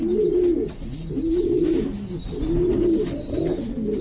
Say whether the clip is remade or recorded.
recorded